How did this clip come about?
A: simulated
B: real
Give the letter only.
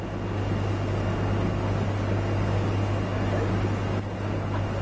B